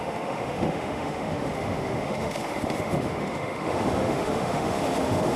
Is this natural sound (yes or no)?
no